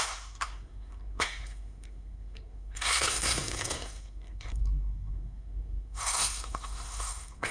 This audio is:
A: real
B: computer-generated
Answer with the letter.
B